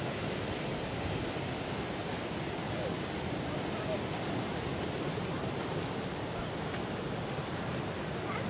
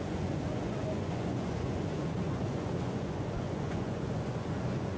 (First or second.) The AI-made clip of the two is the second